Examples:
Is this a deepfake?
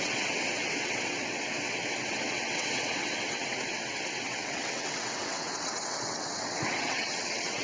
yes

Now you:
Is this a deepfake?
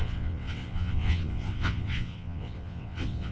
yes